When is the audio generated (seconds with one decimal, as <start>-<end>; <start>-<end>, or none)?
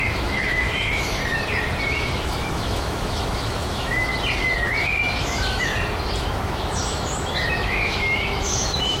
0.0-1.2; 1.9-4.1; 5.2-5.7; 6.2-9.0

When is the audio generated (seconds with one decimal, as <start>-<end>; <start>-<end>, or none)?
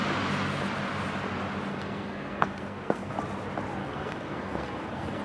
1.7-3.1; 3.8-5.2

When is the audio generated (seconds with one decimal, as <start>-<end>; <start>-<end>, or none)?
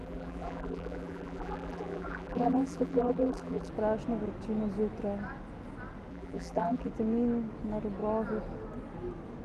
0.0-3.7; 6.1-6.9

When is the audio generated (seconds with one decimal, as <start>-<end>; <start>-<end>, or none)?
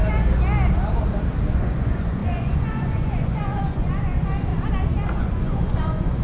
1.5-4.5; 5.2-6.2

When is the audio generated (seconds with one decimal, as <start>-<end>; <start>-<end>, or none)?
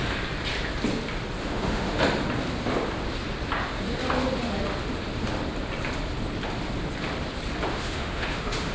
1.4-2.0; 7.7-8.7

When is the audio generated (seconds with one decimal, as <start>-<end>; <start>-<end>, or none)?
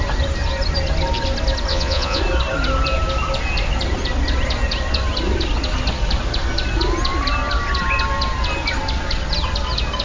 1.7-2.2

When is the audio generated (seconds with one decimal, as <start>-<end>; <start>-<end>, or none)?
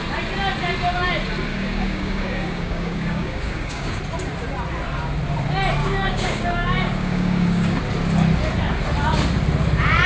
1.5-4.0; 5.8-7.8